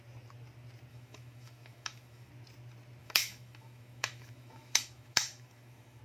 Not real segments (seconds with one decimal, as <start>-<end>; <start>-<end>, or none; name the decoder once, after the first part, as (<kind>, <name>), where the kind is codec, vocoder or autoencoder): 0.9-2.3 (autoencoder, DAC-VAE); 3.0-6.0